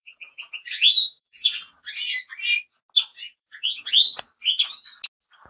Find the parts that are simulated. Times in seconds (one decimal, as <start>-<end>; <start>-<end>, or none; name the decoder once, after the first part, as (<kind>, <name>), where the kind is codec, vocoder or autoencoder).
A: 0.0-1.9 (vocoder, Vocos); 3.1-3.9